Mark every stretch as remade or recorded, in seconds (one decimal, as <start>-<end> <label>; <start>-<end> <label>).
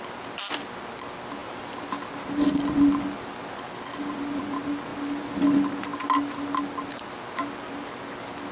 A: 0.0-8.5 recorded